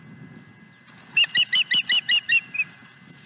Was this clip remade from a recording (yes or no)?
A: no